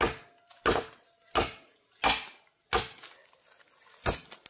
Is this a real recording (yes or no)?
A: yes